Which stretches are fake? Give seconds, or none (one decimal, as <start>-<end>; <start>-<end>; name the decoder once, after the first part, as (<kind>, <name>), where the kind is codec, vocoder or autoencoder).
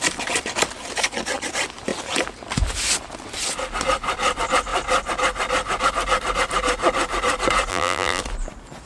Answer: 7.7-8.2 (vocoder, BigVGAN v2)